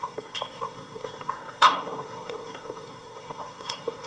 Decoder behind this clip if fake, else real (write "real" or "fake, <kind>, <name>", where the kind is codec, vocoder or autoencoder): fake, codec, SNAC